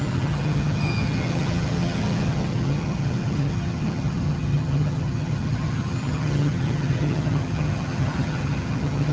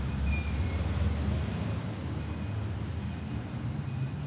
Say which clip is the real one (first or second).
second